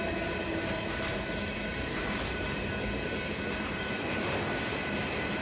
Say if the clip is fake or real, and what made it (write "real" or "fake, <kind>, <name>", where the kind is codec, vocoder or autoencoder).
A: fake, vocoder, BigVGAN v2